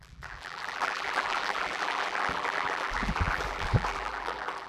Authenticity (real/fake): fake